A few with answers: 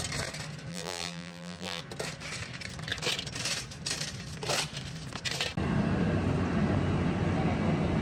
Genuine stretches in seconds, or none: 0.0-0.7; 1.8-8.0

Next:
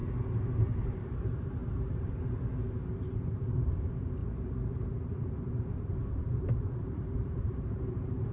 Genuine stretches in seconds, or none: 0.0-0.9; 1.6-3.3; 4.2-6.1

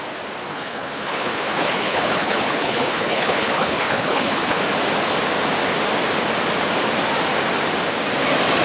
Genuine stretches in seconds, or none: 0.0-0.5; 4.6-8.6

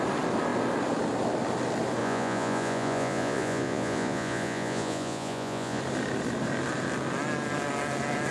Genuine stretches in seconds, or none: 0.0-2.0; 5.8-8.3

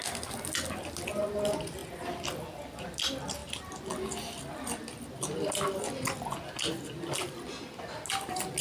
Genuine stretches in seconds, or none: 0.0-8.6

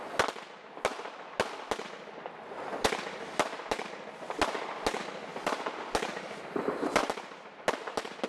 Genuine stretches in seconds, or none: 0.0-5.3; 5.9-8.3

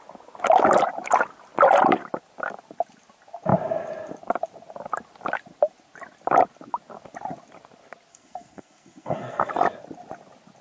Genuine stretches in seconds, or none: 0.0-8.1; 9.5-10.6

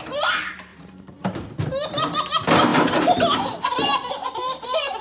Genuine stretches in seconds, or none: 0.0-0.7; 2.3-2.7